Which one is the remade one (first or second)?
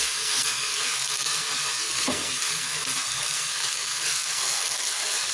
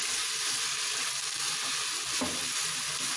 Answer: first